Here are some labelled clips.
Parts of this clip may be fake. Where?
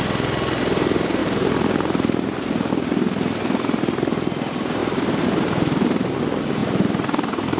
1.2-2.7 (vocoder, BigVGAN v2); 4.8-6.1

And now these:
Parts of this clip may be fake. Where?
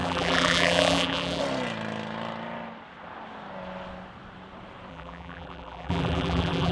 0.0-1.4 (vocoder, BigVGAN v2); 4.9-6.7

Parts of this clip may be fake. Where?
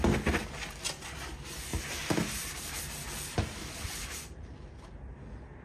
1.7-4.4 (vocoder, BigVGAN v2)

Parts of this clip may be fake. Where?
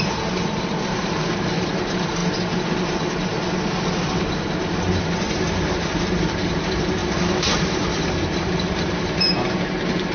0.0-2.2 (vocoder, BigVGAN v2); 5.0-10.1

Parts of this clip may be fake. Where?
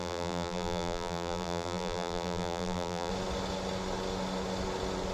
0.0-3.1 (vocoder, BigVGAN v2)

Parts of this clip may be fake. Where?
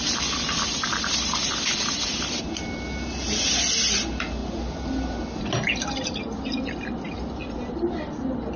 0.9-2.4 (vocoder, BigVGAN v2)